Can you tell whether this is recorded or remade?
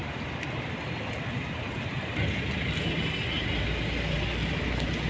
recorded